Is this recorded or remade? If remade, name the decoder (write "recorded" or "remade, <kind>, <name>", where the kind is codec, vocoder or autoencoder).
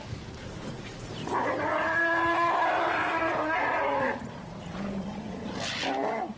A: recorded